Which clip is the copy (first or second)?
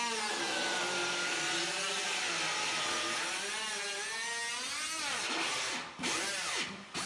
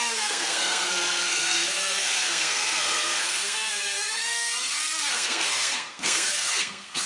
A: second